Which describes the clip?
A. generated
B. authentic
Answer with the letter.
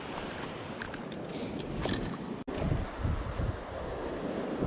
B